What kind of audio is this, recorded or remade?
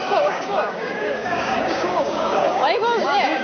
remade